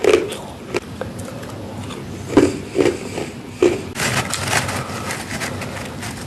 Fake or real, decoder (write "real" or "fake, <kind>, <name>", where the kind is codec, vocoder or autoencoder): real